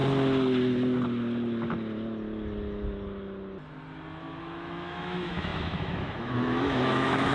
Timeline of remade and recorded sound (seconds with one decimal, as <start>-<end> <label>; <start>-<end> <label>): 0.0-4.4 recorded; 4.4-7.3 remade